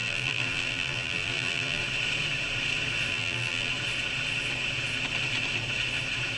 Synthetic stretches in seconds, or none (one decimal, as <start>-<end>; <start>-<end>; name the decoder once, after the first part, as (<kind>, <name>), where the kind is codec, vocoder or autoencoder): 0.0-1.8 (vocoder, BigVGAN v2); 3.1-3.7